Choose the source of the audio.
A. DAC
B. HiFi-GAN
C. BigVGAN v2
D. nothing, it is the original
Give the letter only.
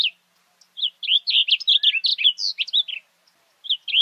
D